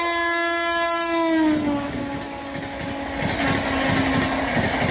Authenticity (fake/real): real